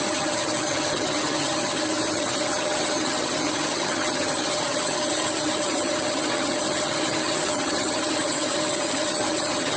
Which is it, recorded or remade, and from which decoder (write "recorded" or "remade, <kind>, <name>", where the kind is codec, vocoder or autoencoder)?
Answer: remade, vocoder, HiFi-GAN